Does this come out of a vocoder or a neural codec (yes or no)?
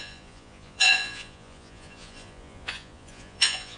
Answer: yes